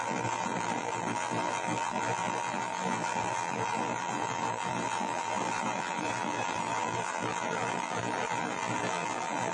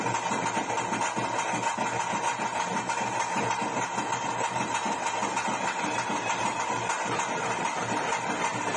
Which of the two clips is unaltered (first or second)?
second